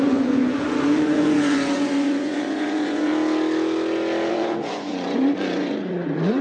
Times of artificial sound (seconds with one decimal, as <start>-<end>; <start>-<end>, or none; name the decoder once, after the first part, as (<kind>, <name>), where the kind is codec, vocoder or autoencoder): 0.0-3.1 (vocoder, Vocos); 4.3-6.4